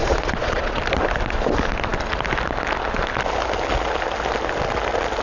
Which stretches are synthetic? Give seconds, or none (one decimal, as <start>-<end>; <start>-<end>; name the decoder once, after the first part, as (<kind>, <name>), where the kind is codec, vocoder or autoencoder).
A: 0.0-0.8 (vocoder, Vocos)